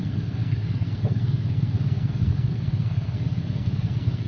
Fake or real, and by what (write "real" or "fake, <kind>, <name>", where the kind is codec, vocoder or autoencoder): fake, codec, SNAC